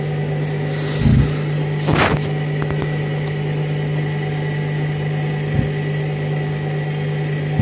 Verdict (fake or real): real